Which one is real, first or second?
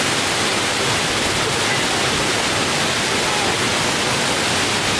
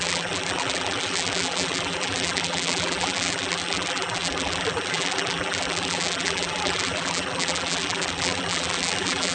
first